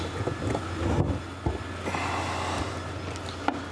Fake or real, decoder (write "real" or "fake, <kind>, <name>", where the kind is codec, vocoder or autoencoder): real